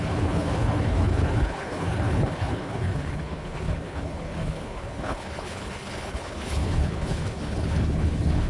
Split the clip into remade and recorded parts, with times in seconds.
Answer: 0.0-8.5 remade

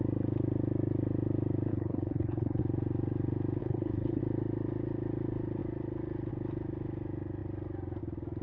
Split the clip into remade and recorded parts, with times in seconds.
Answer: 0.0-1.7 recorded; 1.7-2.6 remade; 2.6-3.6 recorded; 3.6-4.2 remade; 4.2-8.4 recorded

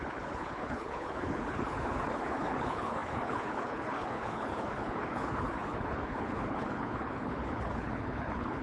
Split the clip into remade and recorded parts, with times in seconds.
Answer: 0.0-8.6 remade